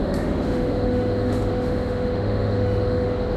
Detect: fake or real fake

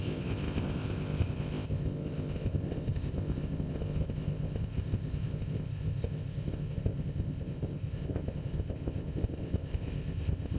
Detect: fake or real fake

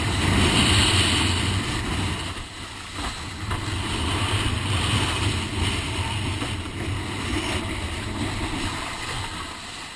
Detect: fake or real real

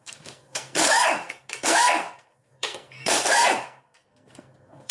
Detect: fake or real fake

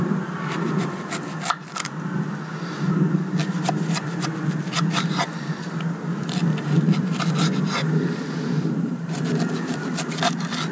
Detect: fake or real real